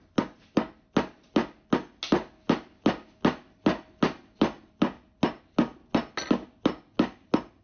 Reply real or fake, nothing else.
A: real